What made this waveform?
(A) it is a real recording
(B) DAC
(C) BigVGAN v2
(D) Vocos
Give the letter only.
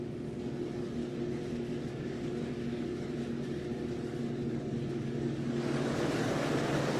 B